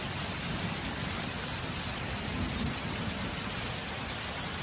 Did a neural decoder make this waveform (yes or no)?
no